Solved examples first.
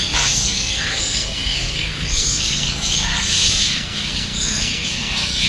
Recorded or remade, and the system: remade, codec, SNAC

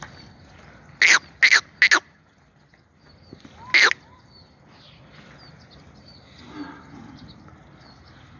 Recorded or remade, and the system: recorded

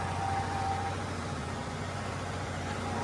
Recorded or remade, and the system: remade, vocoder, Vocos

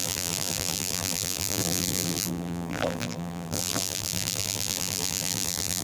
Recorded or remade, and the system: remade, vocoder, BigVGAN v2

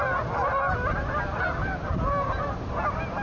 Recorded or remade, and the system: recorded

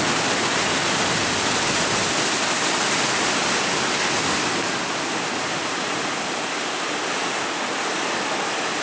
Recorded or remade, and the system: recorded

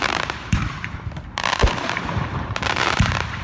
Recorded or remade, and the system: remade, vocoder, BigVGAN v2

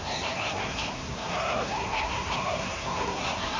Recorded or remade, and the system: remade, codec, SNAC